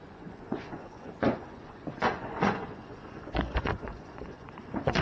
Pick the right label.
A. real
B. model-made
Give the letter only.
B